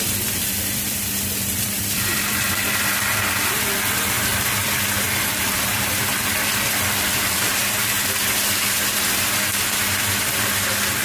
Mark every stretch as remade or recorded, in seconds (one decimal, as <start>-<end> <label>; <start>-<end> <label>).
0.0-7.5 remade; 7.5-10.4 recorded; 10.4-11.0 remade